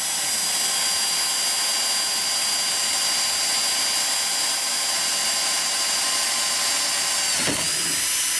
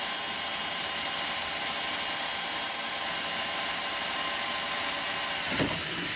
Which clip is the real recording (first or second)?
first